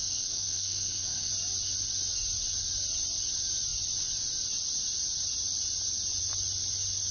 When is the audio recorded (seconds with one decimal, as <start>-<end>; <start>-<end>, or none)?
1.3-7.1